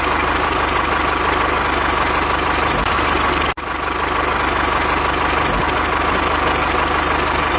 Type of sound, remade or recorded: recorded